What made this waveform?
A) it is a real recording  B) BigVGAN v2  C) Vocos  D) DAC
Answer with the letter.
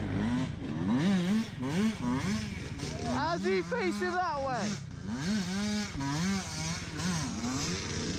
A